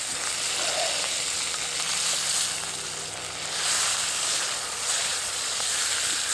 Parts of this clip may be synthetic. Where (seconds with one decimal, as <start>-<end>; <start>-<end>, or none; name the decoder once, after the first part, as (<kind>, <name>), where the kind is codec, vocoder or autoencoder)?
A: 4.3-5.7 (vocoder, Vocos)